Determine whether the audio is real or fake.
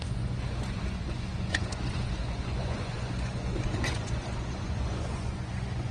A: fake